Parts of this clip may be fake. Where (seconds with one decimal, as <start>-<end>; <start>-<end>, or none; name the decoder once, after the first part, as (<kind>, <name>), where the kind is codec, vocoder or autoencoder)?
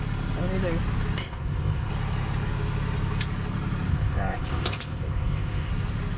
1.2-1.9 (codec, ZipCodec); 3.9-5.7